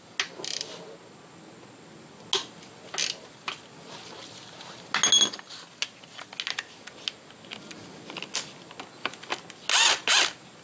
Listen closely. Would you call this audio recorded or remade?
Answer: recorded